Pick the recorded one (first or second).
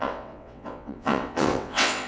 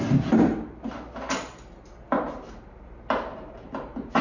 second